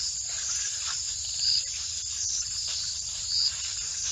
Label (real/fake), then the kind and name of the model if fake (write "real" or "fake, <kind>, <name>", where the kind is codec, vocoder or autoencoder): fake, vocoder, BigVGAN v2